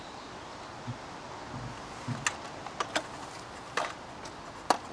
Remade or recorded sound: recorded